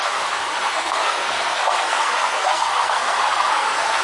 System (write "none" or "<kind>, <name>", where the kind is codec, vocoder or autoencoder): codec, SNAC